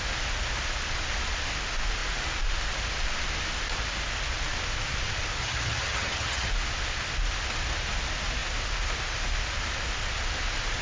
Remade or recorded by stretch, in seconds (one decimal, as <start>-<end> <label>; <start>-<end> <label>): 0.0-5.4 recorded; 5.4-6.5 remade; 6.5-10.8 recorded